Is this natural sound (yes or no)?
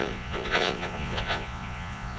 no